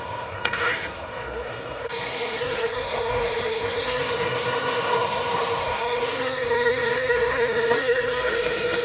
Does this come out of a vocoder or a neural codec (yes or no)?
yes